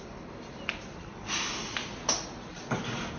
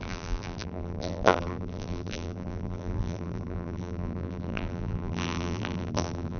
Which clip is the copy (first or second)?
second